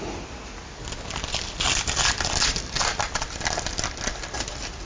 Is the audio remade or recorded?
recorded